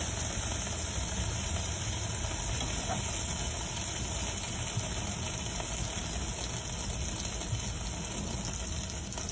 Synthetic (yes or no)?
no